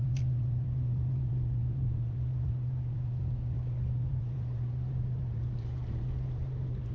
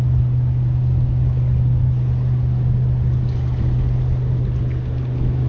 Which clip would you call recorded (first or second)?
second